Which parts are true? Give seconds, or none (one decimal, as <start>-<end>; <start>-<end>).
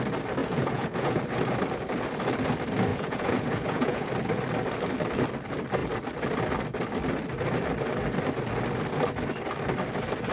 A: 0.0-0.4; 1.2-2.9; 4.1-10.3